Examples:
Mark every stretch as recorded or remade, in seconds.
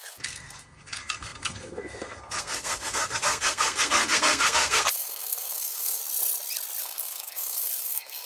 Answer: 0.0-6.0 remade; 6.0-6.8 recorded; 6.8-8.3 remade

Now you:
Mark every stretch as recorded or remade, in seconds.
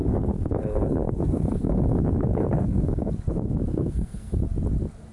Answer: 0.0-3.1 remade; 3.1-3.7 recorded; 3.7-4.3 remade; 4.3-5.1 recorded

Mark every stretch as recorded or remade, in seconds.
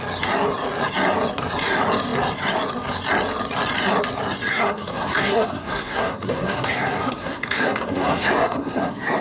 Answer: 0.0-4.5 recorded; 4.5-9.2 remade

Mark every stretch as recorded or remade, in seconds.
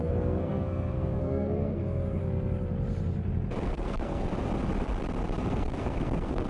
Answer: 0.0-2.2 remade; 2.2-3.6 recorded; 3.6-4.3 remade; 4.3-5.5 recorded; 5.5-6.5 remade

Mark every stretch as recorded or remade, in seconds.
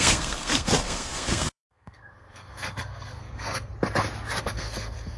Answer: 0.0-3.7 remade; 3.7-4.4 recorded; 4.4-5.2 remade